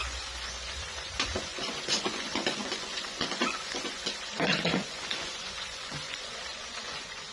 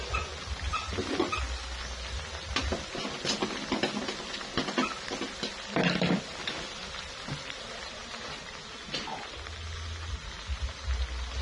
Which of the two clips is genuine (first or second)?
second